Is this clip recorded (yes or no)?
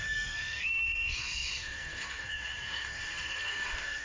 no